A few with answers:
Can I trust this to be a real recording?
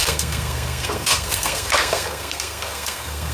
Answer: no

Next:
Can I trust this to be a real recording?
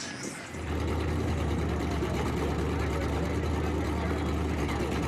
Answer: yes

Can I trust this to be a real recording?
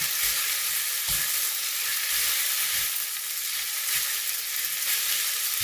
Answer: yes